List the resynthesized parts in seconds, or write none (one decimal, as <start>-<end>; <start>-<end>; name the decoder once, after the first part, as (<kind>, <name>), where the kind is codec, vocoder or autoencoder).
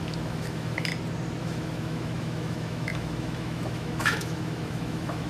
0.0-0.9 (autoencoder, DAC-VAE); 1.4-5.3